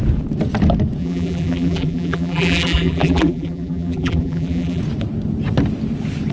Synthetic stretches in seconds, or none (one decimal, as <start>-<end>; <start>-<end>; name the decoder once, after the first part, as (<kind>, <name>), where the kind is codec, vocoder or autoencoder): 1.0-4.8 (vocoder, BigVGAN v2)